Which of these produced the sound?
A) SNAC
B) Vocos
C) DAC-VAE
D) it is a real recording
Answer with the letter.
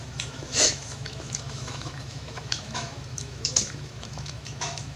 C